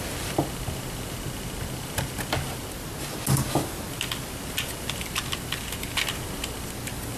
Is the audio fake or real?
real